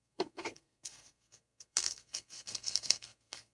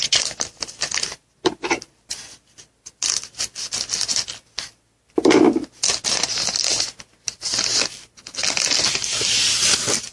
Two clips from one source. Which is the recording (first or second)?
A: second